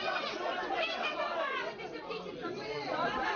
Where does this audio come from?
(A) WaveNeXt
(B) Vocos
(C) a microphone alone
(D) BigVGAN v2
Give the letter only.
A